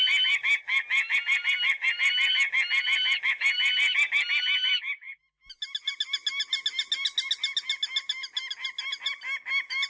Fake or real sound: real